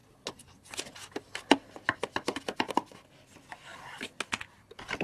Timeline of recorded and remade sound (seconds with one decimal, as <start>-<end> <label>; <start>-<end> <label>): 0.0-5.0 recorded